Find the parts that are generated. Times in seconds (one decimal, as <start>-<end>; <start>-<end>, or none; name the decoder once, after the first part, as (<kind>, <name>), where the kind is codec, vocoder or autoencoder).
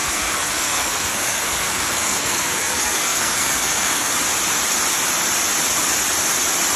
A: 0.0-4.1 (codec, SNAC)